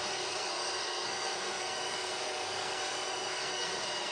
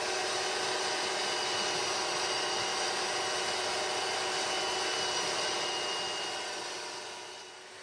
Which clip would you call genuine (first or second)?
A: second